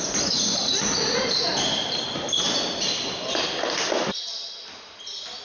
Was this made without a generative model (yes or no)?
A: yes